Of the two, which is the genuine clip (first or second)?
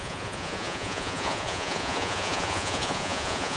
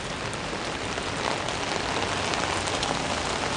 second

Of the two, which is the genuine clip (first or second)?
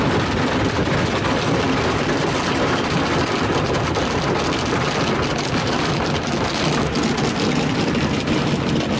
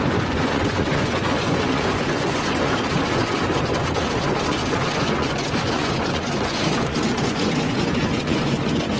first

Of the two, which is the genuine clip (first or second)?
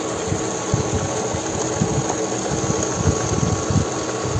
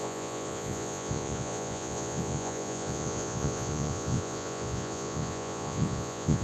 first